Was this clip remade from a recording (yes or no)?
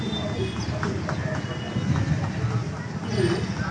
no